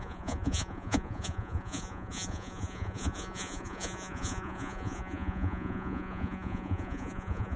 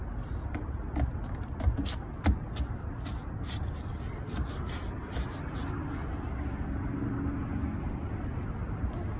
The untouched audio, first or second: second